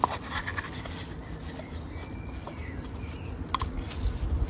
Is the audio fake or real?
real